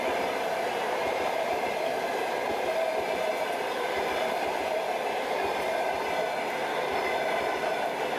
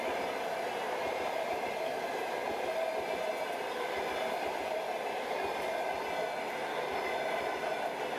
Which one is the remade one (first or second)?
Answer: first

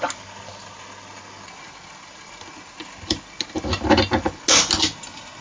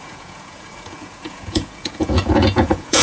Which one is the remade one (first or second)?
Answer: second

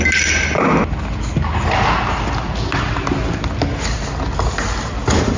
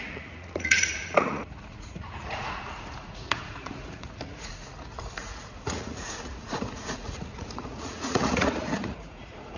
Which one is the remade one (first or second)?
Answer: second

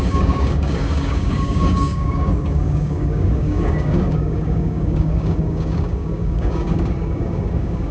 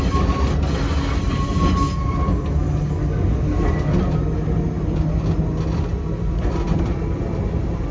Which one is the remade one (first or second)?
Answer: first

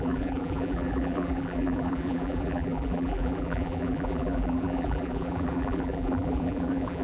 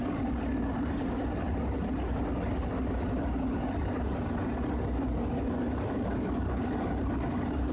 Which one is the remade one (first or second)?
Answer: first